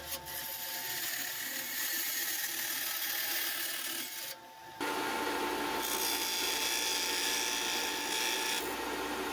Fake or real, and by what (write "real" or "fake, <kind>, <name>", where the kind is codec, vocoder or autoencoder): real